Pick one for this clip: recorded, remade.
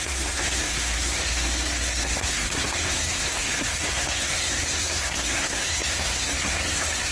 remade